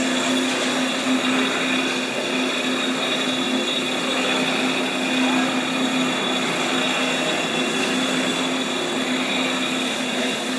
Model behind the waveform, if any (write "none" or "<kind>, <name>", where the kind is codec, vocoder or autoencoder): none